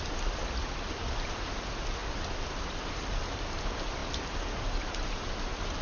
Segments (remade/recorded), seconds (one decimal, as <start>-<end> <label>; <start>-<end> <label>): 0.0-1.0 recorded; 1.0-1.6 remade; 1.6-2.0 recorded; 2.0-3.6 remade; 3.6-5.8 recorded